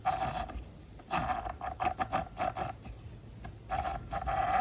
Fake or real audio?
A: real